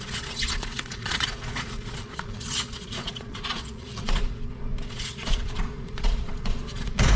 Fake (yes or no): yes